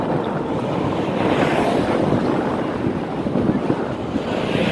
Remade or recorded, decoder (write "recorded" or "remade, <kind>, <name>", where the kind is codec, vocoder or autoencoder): recorded